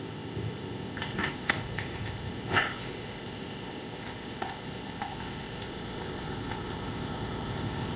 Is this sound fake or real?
fake